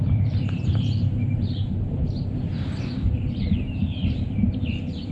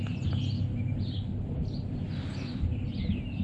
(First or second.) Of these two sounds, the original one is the second